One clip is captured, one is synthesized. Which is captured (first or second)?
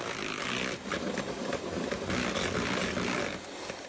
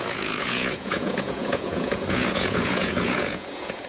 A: first